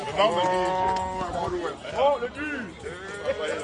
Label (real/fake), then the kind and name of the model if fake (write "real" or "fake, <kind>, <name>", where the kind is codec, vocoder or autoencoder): real